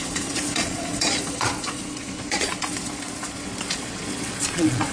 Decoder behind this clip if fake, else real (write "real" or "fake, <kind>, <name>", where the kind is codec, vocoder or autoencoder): fake, vocoder, Vocos